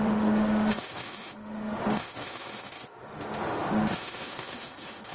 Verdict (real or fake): fake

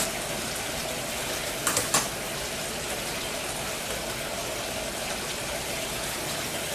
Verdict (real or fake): real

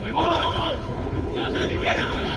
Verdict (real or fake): fake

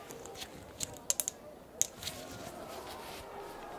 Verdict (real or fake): real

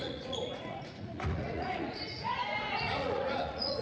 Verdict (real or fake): fake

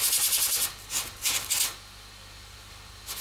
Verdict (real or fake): real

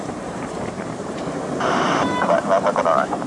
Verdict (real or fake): fake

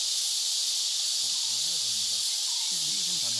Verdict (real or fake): real